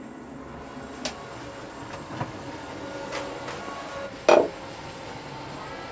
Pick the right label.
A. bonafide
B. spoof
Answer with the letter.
A